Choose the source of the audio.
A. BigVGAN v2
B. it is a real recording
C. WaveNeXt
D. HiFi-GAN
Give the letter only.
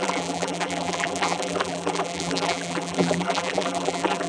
A